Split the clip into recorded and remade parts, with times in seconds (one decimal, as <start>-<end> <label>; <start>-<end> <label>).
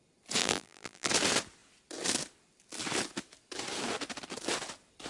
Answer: 0.0-0.4 recorded; 0.4-1.1 remade; 1.1-5.1 recorded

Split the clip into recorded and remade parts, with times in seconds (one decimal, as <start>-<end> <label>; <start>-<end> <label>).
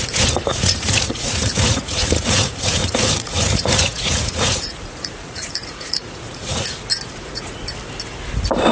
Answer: 0.0-6.5 remade; 6.5-7.1 recorded; 7.1-7.6 remade; 7.6-8.7 recorded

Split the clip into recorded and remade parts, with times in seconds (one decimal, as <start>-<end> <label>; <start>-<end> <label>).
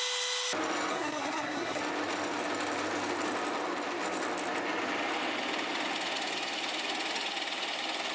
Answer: 0.0-0.9 recorded; 0.9-1.8 remade; 1.8-8.1 recorded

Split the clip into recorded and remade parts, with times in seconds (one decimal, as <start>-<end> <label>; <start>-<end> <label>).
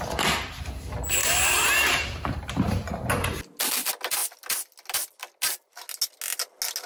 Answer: 0.0-1.2 recorded; 1.2-2.9 remade; 2.9-6.9 recorded